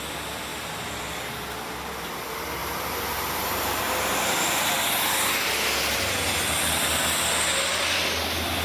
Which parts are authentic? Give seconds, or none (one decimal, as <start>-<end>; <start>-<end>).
0.0-0.5; 1.0-2.6; 3.8-8.6